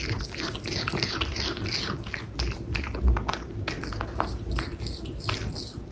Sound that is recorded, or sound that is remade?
recorded